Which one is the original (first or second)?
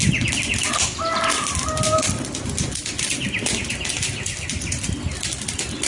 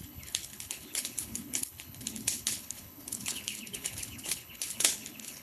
first